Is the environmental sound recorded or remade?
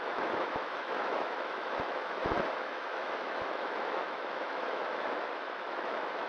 remade